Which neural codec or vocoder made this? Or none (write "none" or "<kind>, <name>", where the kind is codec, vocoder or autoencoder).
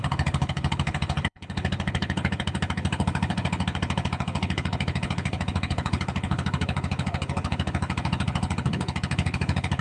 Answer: codec, HILCodec